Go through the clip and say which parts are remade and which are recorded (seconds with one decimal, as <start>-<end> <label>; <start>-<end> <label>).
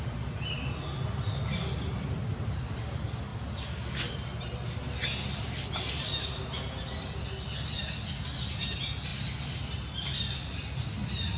0.0-11.4 recorded